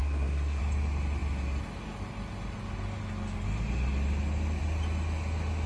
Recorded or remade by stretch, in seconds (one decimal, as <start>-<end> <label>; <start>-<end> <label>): 0.0-0.6 remade; 0.6-5.7 recorded